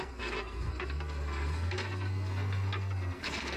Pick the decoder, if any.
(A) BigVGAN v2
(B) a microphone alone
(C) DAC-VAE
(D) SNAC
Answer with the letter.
D